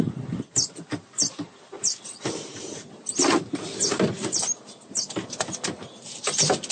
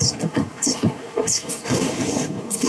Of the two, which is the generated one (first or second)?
second